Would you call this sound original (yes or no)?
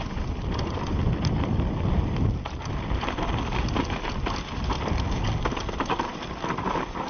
yes